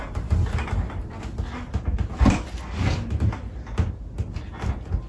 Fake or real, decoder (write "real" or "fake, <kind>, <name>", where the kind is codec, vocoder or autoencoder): real